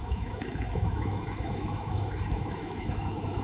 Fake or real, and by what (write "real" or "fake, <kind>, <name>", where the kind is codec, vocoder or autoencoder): fake, autoencoder, DAC-VAE